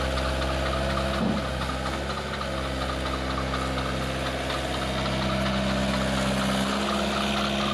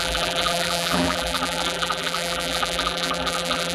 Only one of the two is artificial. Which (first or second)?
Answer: second